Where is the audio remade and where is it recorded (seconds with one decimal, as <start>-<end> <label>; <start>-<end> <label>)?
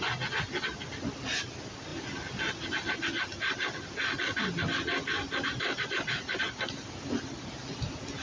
0.0-8.2 recorded